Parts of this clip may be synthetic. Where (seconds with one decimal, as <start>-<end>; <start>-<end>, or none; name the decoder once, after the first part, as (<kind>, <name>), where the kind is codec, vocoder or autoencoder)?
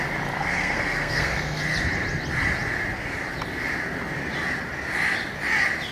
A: 0.4-1.6 (codec, SNAC)